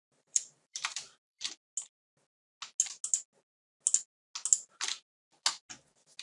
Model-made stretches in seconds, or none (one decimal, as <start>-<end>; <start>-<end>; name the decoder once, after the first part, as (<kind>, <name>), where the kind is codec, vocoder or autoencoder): 0.0-1.5 (vocoder, BigVGAN v2)